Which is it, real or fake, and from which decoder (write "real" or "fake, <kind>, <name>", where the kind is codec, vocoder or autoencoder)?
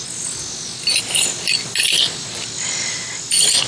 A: real